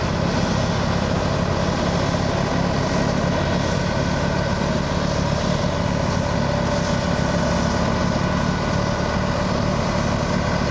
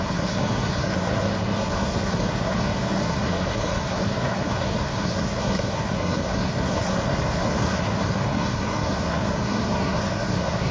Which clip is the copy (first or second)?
second